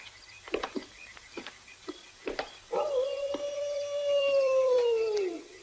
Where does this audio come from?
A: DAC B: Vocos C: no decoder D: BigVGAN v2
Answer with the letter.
D